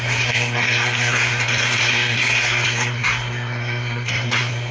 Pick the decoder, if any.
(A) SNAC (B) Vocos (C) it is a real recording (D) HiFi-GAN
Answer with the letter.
A